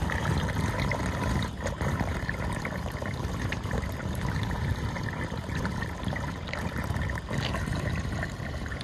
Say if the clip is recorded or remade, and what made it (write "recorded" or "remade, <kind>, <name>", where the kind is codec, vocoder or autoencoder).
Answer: remade, vocoder, BigVGAN v2